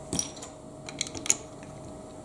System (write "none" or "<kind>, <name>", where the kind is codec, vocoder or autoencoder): none